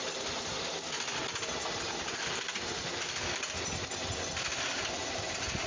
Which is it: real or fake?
real